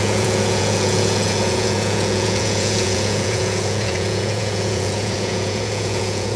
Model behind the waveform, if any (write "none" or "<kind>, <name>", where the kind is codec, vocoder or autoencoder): vocoder, Vocos